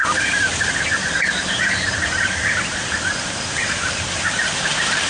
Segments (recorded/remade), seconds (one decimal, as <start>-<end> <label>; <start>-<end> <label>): 0.0-0.5 remade; 0.5-1.1 recorded; 1.1-5.1 remade